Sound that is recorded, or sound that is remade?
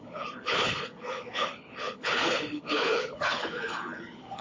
remade